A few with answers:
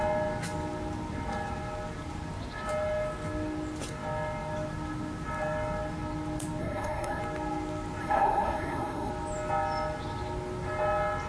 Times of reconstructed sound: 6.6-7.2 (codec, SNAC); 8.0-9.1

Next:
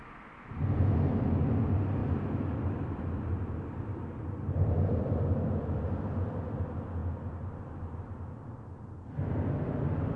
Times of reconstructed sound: 2.0-6.6 (vocoder, BigVGAN v2); 7.0-7.5

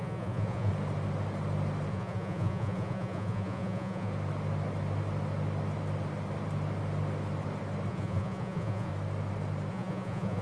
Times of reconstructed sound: 0.0-0.7 (vocoder, Vocos); 1.9-4.1; 7.9-8.9; 9.7-10.4

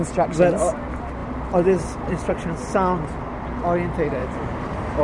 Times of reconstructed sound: 1.2-2.3 (vocoder, BigVGAN v2); 4.2-5.0

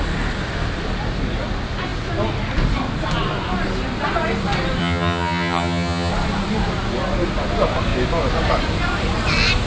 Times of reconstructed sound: 4.8-6.1 (vocoder, HiFi-GAN)

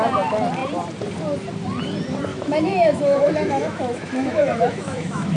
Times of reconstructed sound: 2.3-5.4 (autoencoder, DAC-VAE)

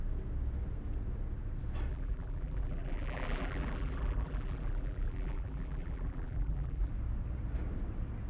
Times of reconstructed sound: 1.9-6.9 (vocoder, BigVGAN v2)

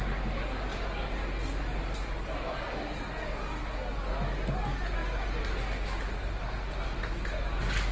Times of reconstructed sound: none